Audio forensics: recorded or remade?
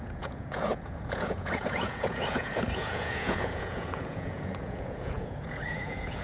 remade